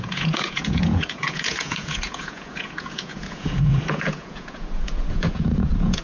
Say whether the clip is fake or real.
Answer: fake